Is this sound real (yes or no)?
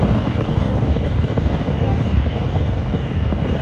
no